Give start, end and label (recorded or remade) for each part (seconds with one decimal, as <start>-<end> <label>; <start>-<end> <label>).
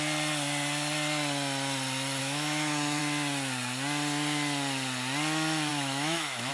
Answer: 0.0-2.2 recorded; 2.2-3.0 remade; 3.0-5.7 recorded; 5.7-6.5 remade